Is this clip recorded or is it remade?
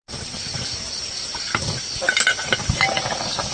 recorded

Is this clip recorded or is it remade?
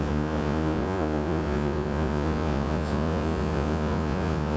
remade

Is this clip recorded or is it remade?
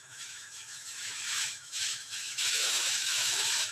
remade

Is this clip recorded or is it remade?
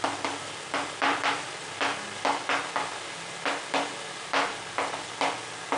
recorded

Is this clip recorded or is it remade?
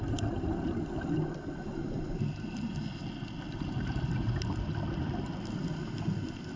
recorded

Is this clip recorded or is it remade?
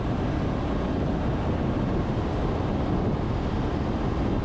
recorded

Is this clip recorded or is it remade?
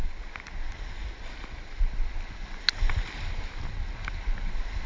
recorded